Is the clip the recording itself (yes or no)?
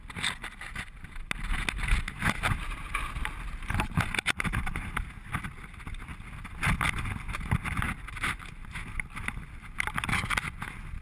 yes